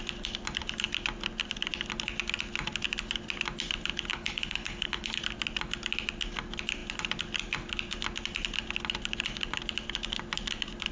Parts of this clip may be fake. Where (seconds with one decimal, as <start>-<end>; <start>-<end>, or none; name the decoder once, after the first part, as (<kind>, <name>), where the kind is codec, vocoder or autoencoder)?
4.1-5.2 (codec, HILCodec)